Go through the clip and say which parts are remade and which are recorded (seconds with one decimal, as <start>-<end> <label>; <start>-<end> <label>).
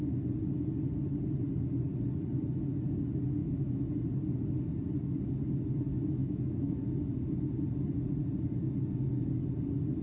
0.0-3.4 recorded; 3.4-3.9 remade; 3.9-6.2 recorded; 6.2-6.8 remade; 6.8-10.0 recorded